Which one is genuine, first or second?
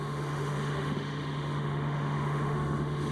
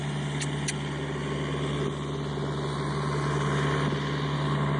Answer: second